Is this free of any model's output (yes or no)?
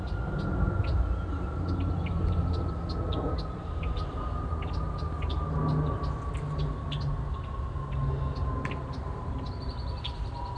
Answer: yes